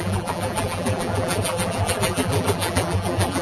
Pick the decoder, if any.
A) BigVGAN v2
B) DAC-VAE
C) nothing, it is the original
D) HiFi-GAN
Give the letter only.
A